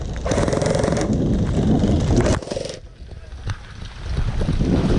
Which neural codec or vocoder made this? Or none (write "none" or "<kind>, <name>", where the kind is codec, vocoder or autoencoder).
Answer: none